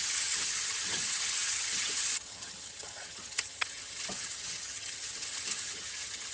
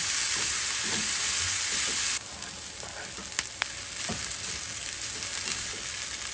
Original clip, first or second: second